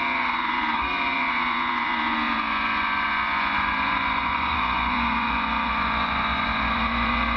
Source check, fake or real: fake